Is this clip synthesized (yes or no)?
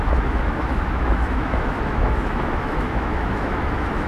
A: yes